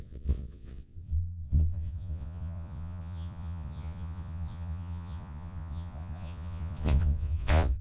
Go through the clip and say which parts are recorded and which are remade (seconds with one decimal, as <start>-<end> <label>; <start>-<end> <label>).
0.0-7.8 remade